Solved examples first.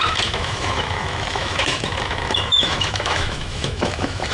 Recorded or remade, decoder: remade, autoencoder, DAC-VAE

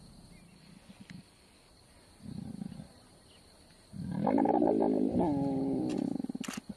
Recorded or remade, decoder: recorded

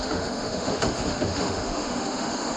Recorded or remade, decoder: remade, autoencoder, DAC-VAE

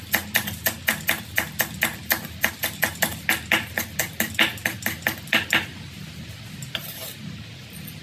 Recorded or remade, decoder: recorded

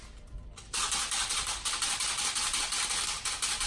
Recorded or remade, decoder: recorded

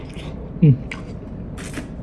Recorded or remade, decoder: recorded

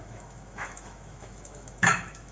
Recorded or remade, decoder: remade, autoencoder, DAC-VAE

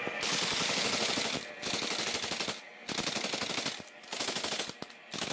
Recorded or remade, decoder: recorded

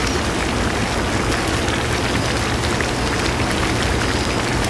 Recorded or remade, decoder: recorded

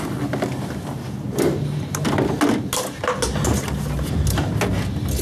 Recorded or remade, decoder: recorded